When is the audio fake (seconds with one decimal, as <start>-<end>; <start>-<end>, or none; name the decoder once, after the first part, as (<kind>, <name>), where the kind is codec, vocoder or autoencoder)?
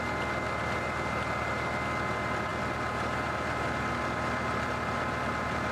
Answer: none